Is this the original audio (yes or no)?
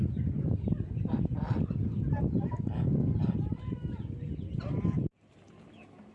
yes